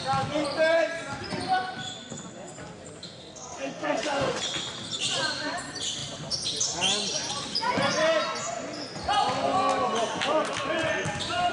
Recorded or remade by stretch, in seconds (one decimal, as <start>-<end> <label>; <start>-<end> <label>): 0.0-3.0 recorded; 3.0-4.4 remade; 4.4-11.5 recorded